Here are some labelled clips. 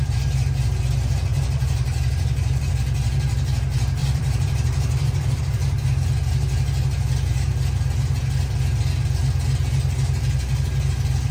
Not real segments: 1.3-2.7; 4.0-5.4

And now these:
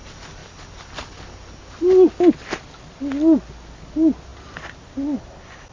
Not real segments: none

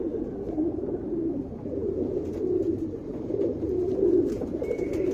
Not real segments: 0.0-5.1

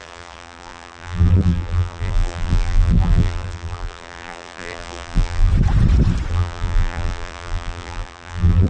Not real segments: 0.0-5.5; 6.3-8.7